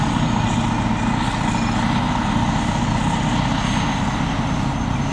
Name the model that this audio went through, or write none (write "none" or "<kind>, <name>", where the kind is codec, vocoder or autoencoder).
none